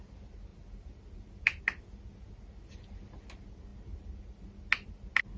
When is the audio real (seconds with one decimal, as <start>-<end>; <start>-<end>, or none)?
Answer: 0.0-5.4